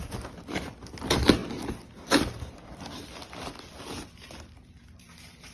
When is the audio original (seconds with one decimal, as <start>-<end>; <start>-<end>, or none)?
0.0-5.5

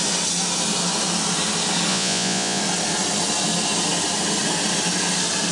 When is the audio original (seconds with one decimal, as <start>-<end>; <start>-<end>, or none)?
0.0-1.9; 2.6-5.5